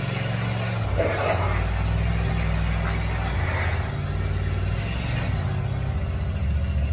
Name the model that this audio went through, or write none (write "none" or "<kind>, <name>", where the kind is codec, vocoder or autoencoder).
none